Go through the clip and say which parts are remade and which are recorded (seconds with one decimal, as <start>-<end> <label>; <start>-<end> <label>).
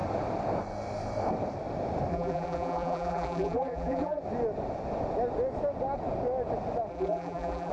0.0-2.1 recorded; 2.1-4.2 remade; 4.2-6.9 recorded; 6.9-7.7 remade